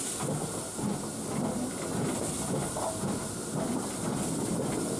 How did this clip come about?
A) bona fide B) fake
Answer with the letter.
A